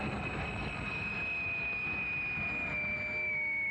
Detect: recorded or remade recorded